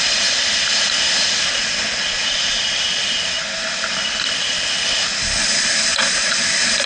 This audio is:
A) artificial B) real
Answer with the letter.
B